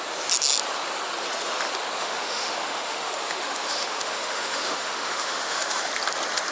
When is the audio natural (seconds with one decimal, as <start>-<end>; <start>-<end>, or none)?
0.0-2.0; 5.9-6.5